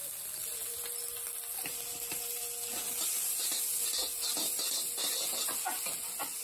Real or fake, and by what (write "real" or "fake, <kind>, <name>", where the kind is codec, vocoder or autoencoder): real